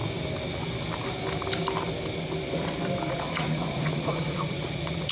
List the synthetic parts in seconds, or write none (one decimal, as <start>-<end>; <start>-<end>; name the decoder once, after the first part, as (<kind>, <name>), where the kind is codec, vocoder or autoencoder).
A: 3.1-5.1 (vocoder, Vocos)